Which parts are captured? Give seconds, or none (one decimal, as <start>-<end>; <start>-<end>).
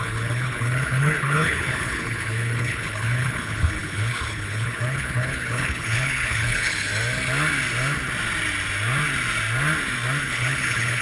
6.9-10.2